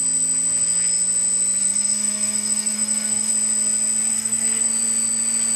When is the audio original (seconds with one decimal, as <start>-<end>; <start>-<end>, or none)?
0.0-1.6; 3.3-4.1; 4.7-5.6